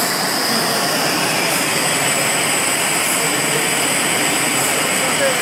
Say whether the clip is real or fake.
real